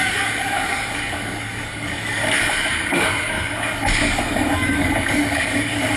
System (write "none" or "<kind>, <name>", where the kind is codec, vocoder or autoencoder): codec, DAC